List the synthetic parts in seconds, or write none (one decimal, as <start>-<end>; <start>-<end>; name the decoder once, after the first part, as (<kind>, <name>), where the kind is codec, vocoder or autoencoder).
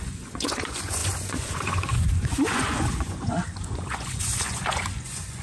0.0-5.4 (vocoder, Vocos)